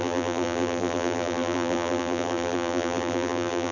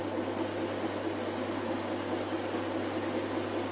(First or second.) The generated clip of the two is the first